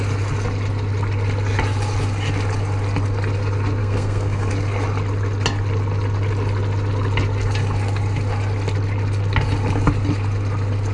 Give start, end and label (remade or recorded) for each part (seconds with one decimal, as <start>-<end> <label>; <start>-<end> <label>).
0.0-3.8 recorded; 3.8-4.5 remade; 4.5-10.9 recorded